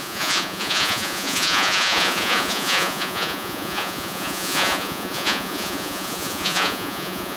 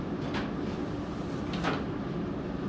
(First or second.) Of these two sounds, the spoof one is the first